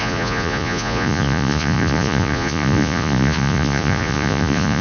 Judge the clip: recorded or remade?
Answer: remade